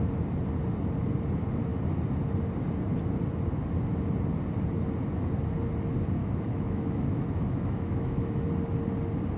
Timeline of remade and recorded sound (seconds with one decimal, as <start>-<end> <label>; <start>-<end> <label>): 0.0-6.2 recorded; 6.2-8.5 remade; 8.5-9.4 recorded

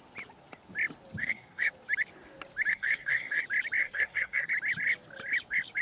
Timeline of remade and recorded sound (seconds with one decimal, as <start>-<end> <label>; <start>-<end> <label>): 0.0-1.2 recorded; 1.2-1.7 remade; 1.7-2.7 recorded; 2.7-3.4 remade; 3.4-3.8 recorded; 3.8-4.5 remade; 4.5-5.8 recorded

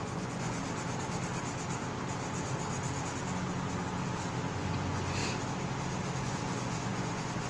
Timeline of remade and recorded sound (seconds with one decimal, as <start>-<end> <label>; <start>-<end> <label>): 0.0-0.6 remade; 0.6-4.5 recorded; 4.5-5.2 remade; 5.2-6.2 recorded; 6.2-7.5 remade

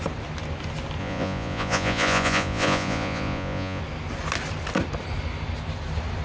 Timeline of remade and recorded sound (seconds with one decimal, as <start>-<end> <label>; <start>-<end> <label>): 0.0-1.0 recorded; 1.0-3.8 remade; 3.8-6.2 recorded

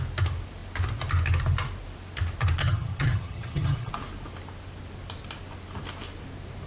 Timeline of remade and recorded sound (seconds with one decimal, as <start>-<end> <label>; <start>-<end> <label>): 0.0-2.6 recorded; 2.6-3.9 remade; 3.9-6.7 recorded